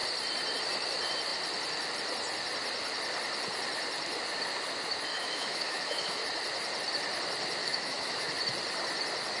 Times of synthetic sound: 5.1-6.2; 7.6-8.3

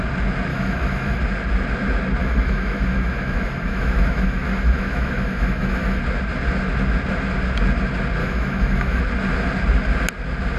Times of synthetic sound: 0.5-1.2; 2.2-6.0; 8.2-9.0

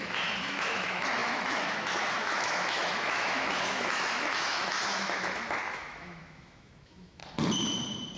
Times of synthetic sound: 0.0-7.2

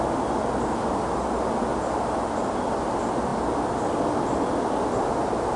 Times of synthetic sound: none

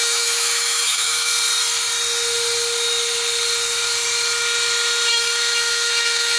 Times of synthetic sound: 0.0-1.3; 5.1-6.4

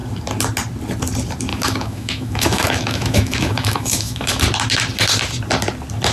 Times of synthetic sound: 1.5-4.4